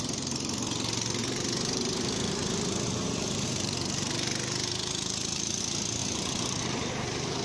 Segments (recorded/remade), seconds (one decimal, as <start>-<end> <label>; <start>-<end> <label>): 0.0-1.2 recorded; 1.2-5.6 remade; 5.6-6.0 recorded; 6.0-6.9 remade; 6.9-7.4 recorded